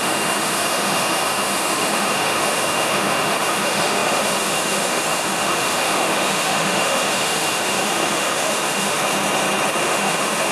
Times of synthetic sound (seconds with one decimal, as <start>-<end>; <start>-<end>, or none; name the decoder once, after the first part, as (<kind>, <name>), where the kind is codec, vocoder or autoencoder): 0.0-9.0 (autoencoder, DAC-VAE); 9.8-10.5